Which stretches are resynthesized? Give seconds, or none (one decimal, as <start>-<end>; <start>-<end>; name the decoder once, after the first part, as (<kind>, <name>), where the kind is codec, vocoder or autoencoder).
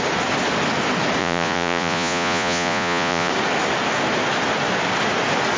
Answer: 1.2-3.3 (vocoder, Vocos)